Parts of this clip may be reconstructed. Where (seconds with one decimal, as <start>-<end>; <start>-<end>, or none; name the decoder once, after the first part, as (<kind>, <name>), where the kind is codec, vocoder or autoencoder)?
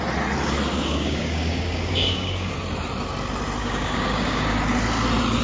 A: 0.7-2.5 (codec, DAC); 3.6-4.6